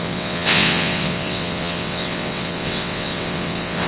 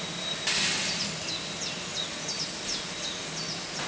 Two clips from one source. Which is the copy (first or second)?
first